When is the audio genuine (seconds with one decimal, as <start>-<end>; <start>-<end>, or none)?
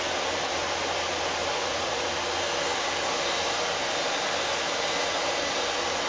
0.0-1.5; 2.1-6.1